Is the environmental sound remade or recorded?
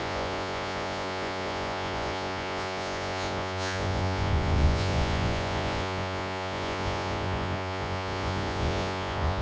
remade